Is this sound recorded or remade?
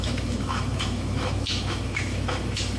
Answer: remade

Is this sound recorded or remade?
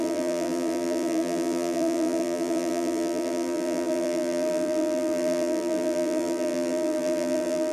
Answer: remade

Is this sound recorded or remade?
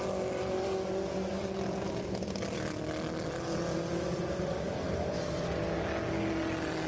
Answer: recorded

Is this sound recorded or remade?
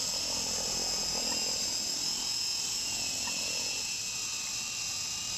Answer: recorded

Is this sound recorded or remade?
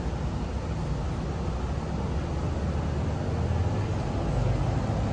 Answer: recorded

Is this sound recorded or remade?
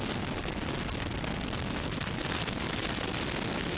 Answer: recorded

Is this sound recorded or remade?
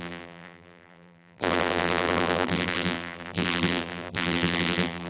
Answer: remade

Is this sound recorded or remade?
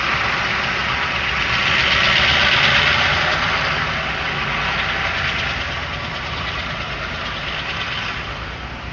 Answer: recorded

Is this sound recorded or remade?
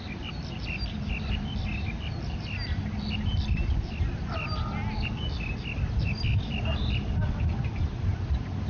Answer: recorded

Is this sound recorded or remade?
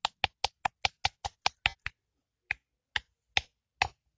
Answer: recorded